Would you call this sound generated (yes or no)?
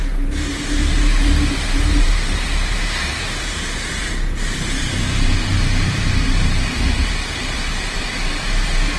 yes